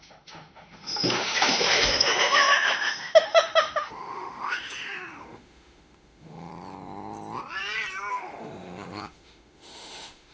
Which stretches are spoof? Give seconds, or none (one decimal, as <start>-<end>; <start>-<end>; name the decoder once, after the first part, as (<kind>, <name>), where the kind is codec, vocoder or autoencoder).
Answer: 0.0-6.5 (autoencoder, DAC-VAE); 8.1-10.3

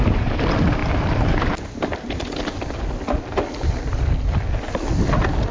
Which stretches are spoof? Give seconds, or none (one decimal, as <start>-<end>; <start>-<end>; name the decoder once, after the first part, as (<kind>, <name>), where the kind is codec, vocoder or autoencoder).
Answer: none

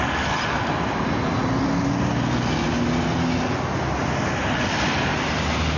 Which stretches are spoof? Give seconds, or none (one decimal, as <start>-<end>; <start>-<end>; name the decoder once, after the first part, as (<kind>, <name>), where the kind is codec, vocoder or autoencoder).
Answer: none

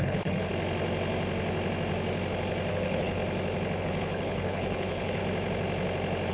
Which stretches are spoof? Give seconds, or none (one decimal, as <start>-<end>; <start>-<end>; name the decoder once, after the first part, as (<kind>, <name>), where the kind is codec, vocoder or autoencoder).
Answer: 0.0-0.5 (codec, HILCodec); 2.7-3.2; 3.8-5.2

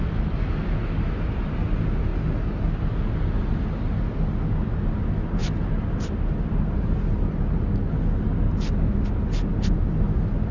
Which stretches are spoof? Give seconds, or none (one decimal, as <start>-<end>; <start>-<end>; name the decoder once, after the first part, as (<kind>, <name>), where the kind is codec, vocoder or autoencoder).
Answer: none

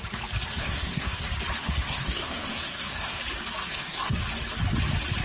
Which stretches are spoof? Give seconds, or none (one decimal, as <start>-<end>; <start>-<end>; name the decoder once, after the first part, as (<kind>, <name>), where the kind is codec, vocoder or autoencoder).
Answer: 0.6-1.2 (codec, SNAC); 1.6-3.2; 3.7-4.2

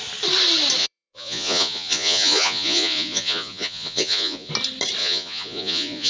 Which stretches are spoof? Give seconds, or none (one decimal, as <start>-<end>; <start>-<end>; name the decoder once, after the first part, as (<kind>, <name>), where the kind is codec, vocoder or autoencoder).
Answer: 0.8-4.5 (vocoder, Vocos); 5.0-6.1